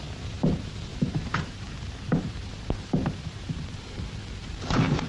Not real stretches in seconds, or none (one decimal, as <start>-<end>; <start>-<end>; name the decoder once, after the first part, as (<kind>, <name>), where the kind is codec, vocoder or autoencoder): 0.9-4.0 (vocoder, BigVGAN v2)